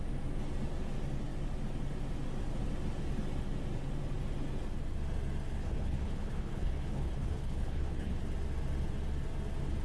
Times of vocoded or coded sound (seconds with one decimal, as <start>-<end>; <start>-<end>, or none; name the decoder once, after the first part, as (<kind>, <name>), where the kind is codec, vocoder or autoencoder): 5.6-8.2 (codec, HILCodec)